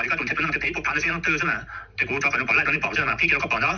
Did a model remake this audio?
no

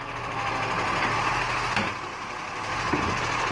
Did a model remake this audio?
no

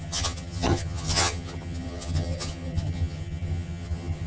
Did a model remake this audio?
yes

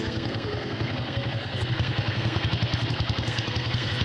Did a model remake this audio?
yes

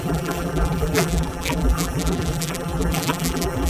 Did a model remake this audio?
yes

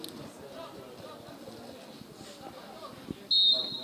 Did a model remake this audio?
no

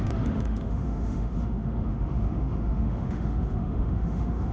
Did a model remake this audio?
yes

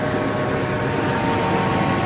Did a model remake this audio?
no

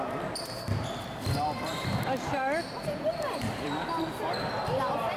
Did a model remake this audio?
yes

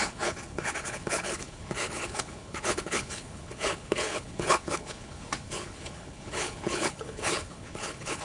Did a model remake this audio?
yes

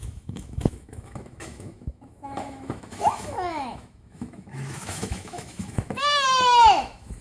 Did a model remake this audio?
yes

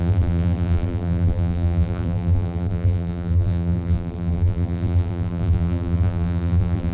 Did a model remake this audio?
yes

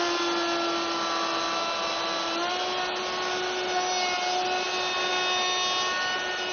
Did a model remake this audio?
no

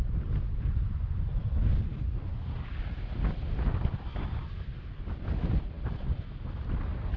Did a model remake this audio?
no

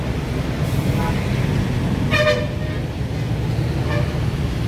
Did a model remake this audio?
no